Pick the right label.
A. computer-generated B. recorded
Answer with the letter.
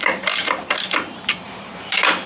A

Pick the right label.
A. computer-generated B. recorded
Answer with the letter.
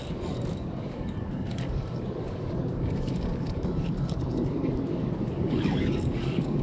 A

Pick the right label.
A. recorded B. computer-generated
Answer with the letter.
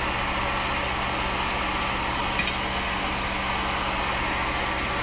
A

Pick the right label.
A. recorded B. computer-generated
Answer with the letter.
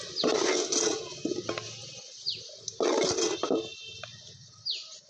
A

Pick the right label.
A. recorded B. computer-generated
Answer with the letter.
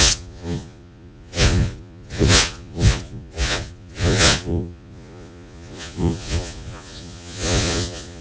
B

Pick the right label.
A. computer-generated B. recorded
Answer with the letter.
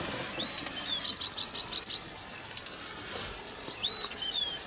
B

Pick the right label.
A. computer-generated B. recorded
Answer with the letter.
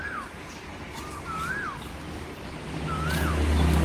B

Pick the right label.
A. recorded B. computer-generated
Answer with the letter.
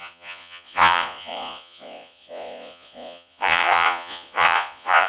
B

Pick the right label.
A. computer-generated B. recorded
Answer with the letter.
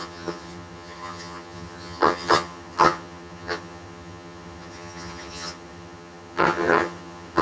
A